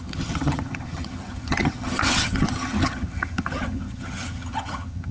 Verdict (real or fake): fake